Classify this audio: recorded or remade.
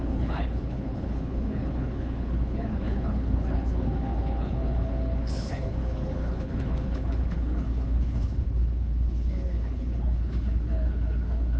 remade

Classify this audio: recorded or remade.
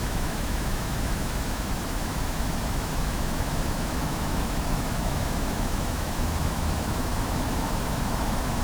remade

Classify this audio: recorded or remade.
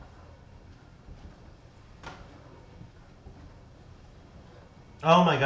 recorded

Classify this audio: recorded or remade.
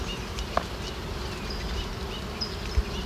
recorded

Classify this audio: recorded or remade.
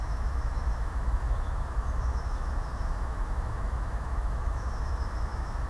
remade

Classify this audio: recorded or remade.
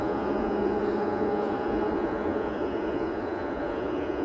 remade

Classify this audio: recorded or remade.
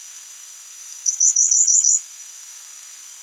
remade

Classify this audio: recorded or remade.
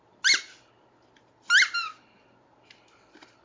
recorded